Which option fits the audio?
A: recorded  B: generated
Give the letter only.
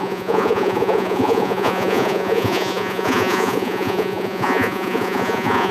B